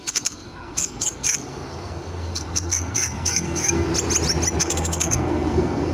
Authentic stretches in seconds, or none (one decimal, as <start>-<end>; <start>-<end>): 3.9-4.6